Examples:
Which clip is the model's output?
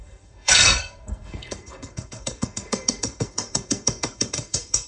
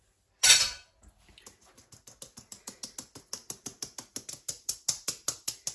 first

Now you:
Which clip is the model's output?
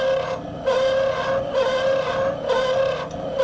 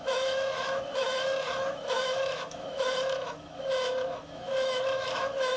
second